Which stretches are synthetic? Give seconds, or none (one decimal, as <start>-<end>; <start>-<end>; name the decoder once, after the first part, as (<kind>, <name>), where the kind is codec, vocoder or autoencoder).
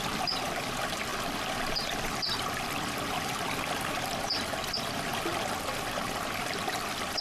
none